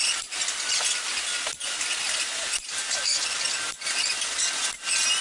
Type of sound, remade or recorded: recorded